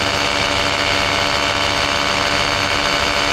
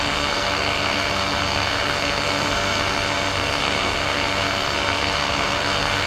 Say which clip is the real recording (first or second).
first